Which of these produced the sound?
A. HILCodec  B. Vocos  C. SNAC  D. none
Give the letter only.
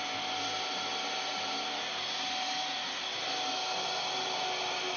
D